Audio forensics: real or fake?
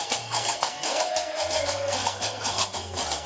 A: fake